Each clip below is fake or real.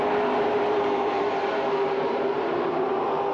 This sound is fake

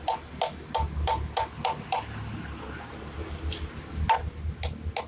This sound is real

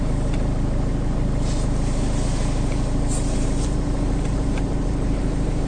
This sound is fake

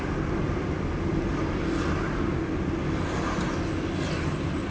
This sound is real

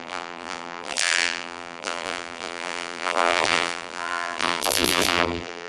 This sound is fake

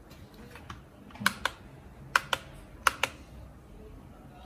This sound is real